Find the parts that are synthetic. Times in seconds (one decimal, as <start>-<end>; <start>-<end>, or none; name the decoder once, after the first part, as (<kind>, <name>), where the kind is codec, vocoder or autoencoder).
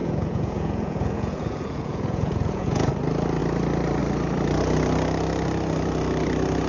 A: 0.0-2.9 (vocoder, Vocos)